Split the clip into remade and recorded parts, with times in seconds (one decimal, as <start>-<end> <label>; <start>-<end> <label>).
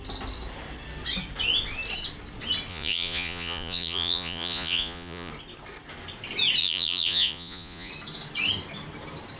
0.0-2.7 recorded; 2.7-5.3 remade; 5.3-6.6 recorded; 6.6-7.9 remade; 7.9-9.4 recorded